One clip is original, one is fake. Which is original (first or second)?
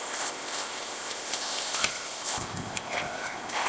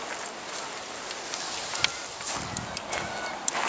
second